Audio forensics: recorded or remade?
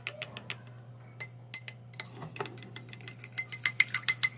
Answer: recorded